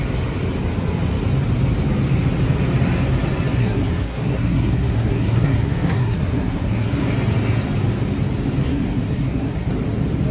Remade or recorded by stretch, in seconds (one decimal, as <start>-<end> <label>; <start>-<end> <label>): 0.0-3.6 recorded; 3.6-7.1 remade; 7.1-8.6 recorded; 8.6-9.7 remade; 9.7-10.3 recorded